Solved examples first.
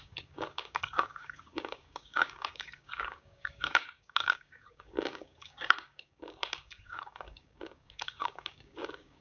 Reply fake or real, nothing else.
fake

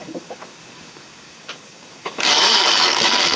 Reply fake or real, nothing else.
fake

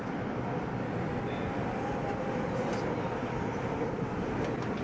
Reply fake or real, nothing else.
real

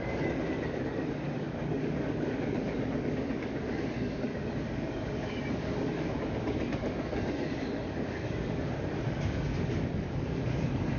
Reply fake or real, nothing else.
fake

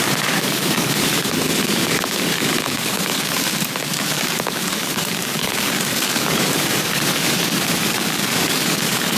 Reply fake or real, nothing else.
fake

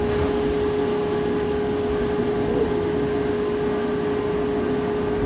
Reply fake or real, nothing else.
real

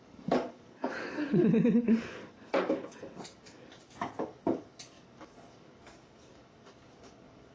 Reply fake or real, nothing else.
fake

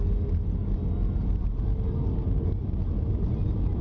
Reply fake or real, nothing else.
real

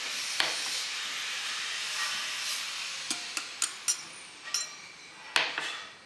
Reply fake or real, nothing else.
real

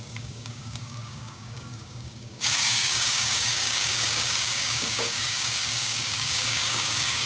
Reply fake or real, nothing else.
fake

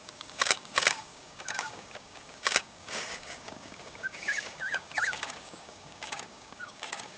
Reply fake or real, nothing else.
fake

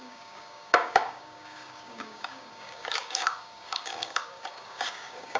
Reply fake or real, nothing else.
fake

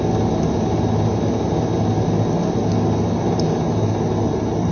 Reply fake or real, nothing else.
real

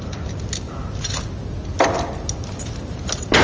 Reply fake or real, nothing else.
real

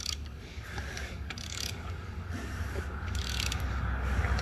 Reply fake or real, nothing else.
fake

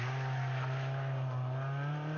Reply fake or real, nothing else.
real